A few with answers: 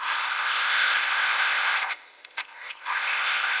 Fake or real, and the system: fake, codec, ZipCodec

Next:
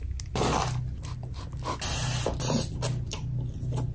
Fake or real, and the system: real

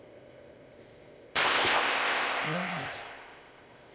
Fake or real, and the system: fake, codec, ZipCodec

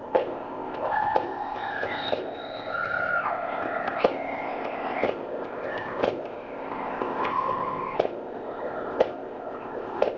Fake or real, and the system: fake, codec, ZipCodec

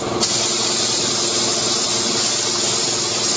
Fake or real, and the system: real